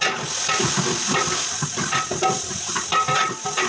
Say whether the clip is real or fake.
real